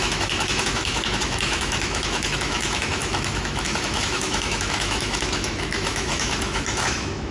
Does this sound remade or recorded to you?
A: remade